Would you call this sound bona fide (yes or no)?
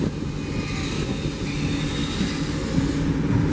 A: yes